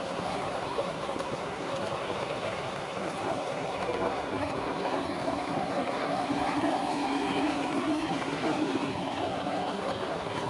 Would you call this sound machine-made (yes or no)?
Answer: yes